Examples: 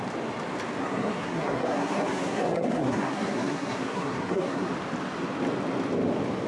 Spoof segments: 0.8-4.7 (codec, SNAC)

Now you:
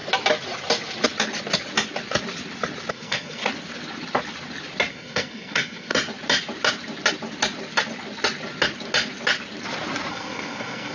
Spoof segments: 2.9-3.4 (codec, SNAC); 4.9-5.9; 10.1-10.9

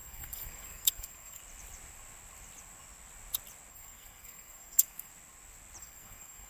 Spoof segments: 0.0-1.4 (codec, SNAC); 3.7-5.1; 5.8-6.5

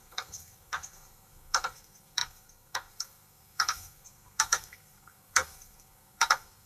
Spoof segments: 0.0-6.7 (codec, SNAC)

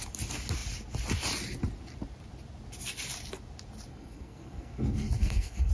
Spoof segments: 3.9-5.7 (codec, SNAC)

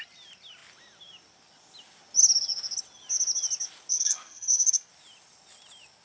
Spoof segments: 3.9-4.9 (codec, SNAC)

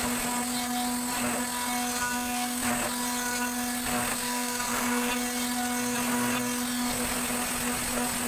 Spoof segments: 2.0-2.7 (codec, SNAC); 4.1-5.1